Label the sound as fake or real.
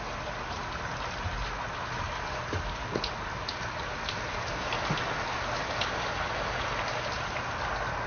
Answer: real